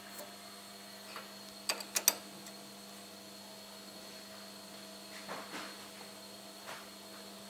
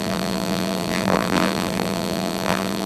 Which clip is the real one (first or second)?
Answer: first